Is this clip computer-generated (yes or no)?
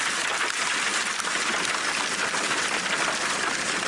no